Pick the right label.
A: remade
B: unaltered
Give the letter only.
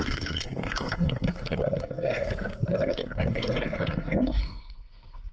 A